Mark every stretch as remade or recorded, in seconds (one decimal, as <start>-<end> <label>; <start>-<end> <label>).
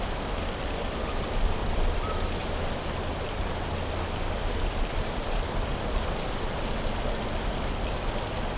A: 0.0-1.6 recorded; 1.6-4.7 remade; 4.7-8.6 recorded